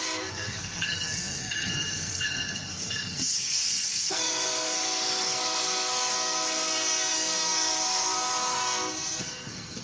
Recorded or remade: remade